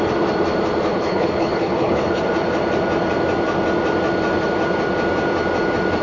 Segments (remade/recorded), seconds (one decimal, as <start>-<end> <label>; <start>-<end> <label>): 0.0-0.9 recorded; 0.9-2.3 remade; 2.3-6.0 recorded